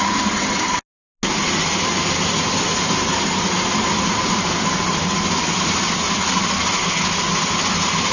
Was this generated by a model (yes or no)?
no